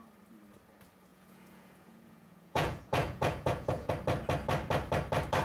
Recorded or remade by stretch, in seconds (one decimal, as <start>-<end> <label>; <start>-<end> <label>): 0.0-1.1 recorded; 1.1-3.9 remade; 3.9-5.4 recorded